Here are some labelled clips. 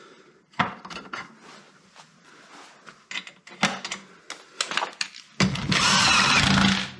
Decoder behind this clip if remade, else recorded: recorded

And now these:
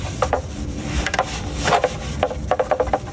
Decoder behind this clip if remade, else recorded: remade, vocoder, BigVGAN v2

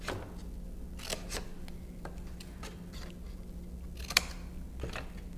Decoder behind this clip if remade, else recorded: recorded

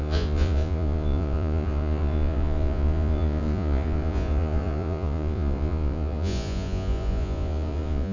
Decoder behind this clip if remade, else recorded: remade, vocoder, Vocos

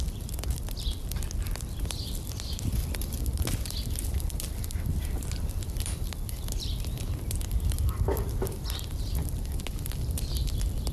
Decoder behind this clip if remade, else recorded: remade, vocoder, BigVGAN v2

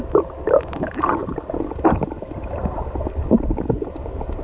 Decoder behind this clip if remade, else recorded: recorded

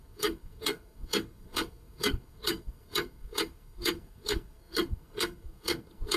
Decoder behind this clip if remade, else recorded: remade, codec, SNAC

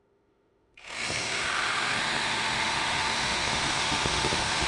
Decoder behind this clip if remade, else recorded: remade, autoencoder, DAC-VAE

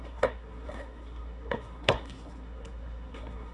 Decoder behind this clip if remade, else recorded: remade, codec, SNAC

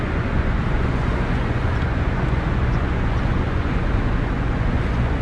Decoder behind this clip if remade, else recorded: remade, vocoder, Vocos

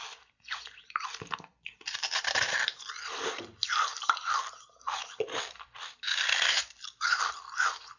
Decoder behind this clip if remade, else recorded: remade, vocoder, BigVGAN v2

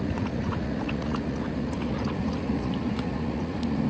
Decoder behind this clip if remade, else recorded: remade, vocoder, Vocos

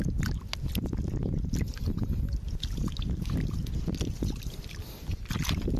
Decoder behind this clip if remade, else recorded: recorded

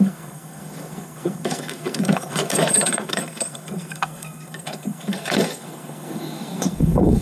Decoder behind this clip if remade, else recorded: remade, codec, SNAC